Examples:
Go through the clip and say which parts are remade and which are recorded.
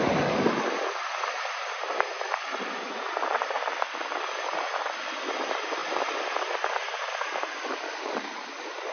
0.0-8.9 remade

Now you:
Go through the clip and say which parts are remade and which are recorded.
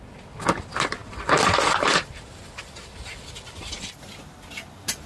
0.0-1.0 recorded; 1.0-4.1 remade; 4.1-5.1 recorded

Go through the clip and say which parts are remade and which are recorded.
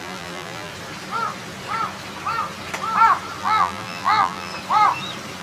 0.0-0.7 remade; 0.7-3.4 recorded; 3.4-4.5 remade; 4.5-5.4 recorded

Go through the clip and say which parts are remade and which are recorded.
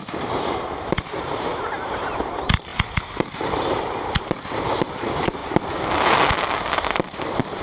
0.0-5.4 remade; 5.4-6.7 recorded; 6.7-7.6 remade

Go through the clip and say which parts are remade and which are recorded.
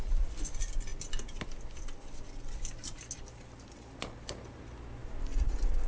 0.0-5.0 recorded; 5.0-5.9 remade